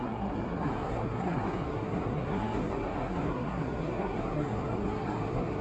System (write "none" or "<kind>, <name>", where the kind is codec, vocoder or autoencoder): codec, SNAC